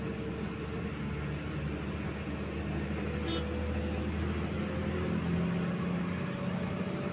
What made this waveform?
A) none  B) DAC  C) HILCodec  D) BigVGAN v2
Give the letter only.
A